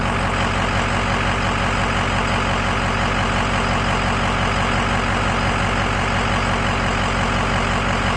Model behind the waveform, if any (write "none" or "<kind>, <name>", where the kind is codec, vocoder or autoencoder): none